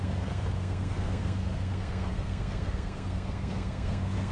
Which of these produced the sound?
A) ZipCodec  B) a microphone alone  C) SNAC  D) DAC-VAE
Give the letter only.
C